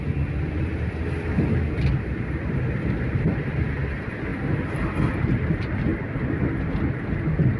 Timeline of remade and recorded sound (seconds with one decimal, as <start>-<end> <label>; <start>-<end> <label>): 0.0-4.3 remade; 4.3-5.1 recorded; 5.1-5.9 remade; 5.9-7.6 recorded